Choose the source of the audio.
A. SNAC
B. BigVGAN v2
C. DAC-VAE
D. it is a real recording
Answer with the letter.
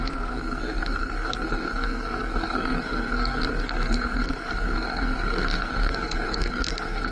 A